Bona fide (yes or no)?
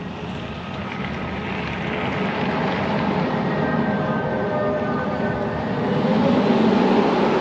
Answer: yes